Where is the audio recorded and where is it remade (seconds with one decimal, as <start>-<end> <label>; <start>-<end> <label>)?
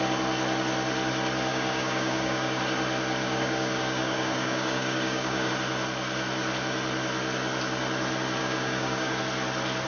0.0-1.5 recorded; 1.5-2.6 remade; 2.6-3.2 recorded; 3.2-5.5 remade; 5.5-8.4 recorded; 8.4-9.2 remade; 9.2-9.9 recorded